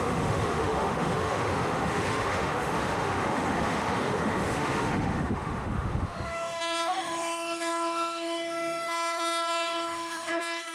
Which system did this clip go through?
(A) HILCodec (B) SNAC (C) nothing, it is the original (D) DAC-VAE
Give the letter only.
D